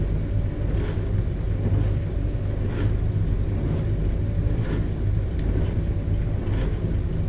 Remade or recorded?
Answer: recorded